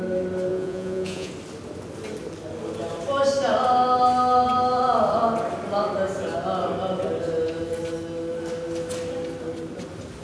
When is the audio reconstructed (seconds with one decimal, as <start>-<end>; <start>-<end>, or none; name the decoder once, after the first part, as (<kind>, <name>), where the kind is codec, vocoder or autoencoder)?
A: 0.5-1.3 (vocoder, Vocos)